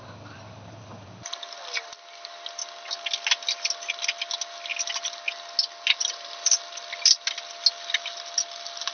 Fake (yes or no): no